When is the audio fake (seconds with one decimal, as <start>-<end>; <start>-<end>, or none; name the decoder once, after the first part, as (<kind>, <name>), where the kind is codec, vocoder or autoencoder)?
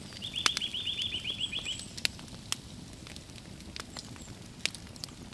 none